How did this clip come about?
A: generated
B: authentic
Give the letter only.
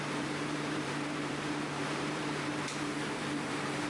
A